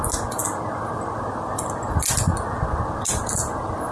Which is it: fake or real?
real